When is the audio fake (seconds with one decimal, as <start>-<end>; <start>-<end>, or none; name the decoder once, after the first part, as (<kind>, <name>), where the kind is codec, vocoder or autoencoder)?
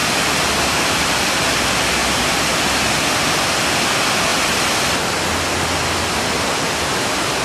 none